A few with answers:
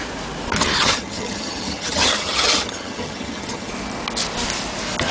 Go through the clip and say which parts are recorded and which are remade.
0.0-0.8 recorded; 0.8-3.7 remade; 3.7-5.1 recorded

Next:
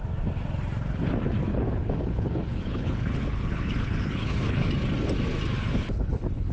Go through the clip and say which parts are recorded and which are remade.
0.0-1.5 recorded; 1.5-4.7 remade; 4.7-5.6 recorded; 5.6-6.5 remade

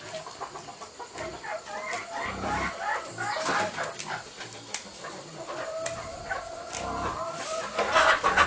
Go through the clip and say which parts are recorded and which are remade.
0.0-8.5 recorded

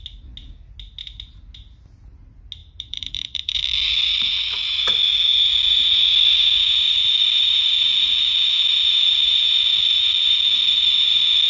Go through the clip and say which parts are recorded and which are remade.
0.0-2.6 recorded; 2.6-3.6 remade; 3.6-11.5 recorded

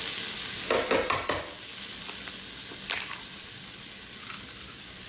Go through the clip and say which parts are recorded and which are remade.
0.0-5.1 recorded

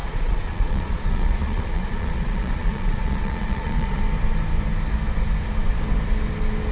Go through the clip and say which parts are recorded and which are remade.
0.0-4.0 remade; 4.0-6.7 recorded